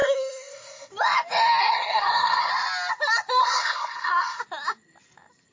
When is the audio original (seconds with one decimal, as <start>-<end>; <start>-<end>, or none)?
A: 0.9-1.6; 2.5-3.4; 4.4-5.5

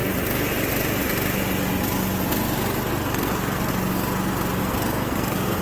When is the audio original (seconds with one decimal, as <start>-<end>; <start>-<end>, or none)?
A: 0.0-2.9; 3.7-4.6